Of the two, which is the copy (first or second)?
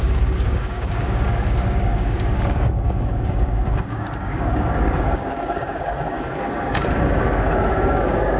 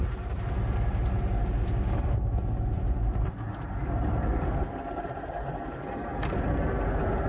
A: first